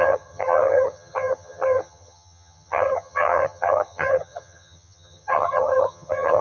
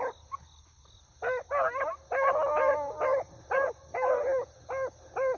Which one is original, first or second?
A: second